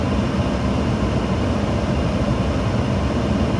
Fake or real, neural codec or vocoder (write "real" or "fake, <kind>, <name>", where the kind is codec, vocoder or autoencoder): real